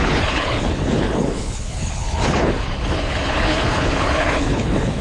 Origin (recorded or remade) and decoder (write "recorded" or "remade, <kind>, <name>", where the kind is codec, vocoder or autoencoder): remade, codec, HILCodec